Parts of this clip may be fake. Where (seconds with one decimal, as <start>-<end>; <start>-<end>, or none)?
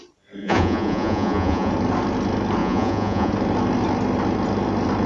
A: 0.4-1.7; 2.6-3.3